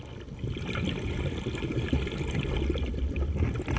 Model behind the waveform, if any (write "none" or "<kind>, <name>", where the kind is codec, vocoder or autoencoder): none